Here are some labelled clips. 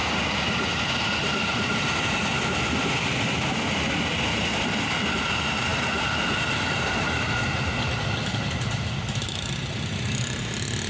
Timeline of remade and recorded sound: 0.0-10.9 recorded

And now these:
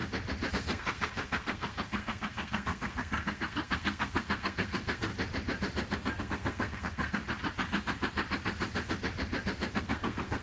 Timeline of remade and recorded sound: 0.0-0.5 recorded; 0.5-5.1 remade; 5.1-6.2 recorded; 6.2-7.2 remade; 7.2-9.7 recorded; 9.7-10.4 remade

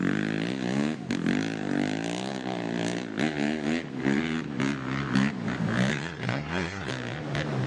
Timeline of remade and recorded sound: 0.0-5.9 recorded; 5.9-6.9 remade; 6.9-7.7 recorded